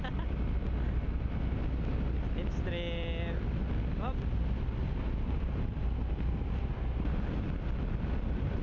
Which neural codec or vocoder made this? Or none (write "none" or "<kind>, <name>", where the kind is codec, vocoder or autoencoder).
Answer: none